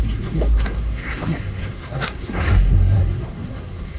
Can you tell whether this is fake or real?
fake